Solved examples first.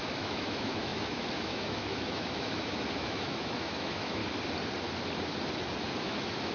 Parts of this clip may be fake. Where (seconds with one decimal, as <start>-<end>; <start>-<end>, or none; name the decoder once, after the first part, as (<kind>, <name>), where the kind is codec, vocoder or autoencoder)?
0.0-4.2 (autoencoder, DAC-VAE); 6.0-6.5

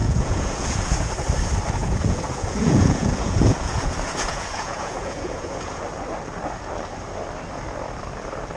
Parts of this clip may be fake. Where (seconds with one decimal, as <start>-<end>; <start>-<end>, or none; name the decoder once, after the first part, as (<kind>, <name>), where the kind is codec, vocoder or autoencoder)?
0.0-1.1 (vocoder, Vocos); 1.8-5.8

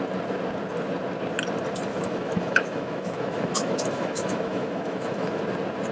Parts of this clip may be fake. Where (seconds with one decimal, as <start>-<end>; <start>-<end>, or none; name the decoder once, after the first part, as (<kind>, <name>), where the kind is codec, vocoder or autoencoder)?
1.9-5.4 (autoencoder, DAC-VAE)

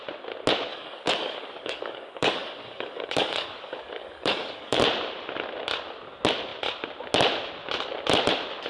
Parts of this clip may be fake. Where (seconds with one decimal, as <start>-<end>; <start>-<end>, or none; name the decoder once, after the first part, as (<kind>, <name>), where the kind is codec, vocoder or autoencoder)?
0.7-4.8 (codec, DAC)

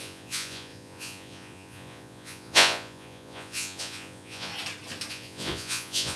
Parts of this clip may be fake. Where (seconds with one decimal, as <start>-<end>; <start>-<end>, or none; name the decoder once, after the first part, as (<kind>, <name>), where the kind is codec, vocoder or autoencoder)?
0.0-4.5 (vocoder, Vocos); 5.1-6.2

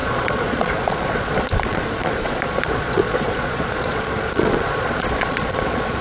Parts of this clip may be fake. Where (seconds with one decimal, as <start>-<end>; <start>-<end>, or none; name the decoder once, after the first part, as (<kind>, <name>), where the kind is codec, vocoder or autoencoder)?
0.0-6.0 (vocoder, Vocos)